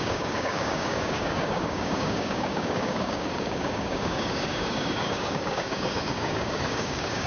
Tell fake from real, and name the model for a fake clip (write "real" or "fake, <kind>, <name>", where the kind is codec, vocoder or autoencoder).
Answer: fake, codec, DAC